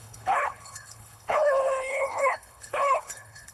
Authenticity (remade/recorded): remade